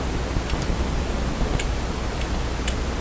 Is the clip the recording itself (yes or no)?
yes